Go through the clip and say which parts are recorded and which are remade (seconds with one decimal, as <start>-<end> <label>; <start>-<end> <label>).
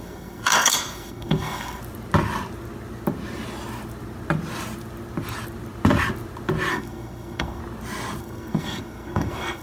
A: 0.0-1.8 remade; 1.8-6.7 recorded; 6.7-7.6 remade; 7.6-8.2 recorded; 8.2-9.6 remade